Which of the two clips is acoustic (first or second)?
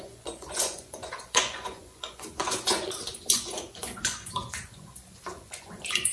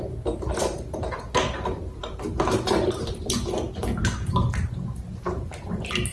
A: second